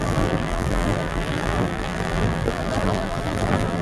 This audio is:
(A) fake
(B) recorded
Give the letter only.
A